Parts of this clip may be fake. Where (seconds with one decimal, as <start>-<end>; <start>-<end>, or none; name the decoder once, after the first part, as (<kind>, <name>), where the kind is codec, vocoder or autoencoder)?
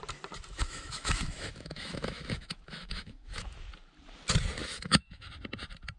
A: 0.5-3.7 (autoencoder, DAC-VAE); 4.6-5.3